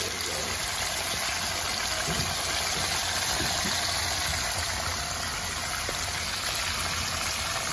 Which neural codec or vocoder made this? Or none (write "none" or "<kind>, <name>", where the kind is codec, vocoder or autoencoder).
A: none